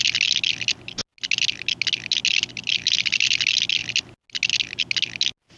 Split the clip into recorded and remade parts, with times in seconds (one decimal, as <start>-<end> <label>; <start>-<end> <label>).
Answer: 0.0-5.6 recorded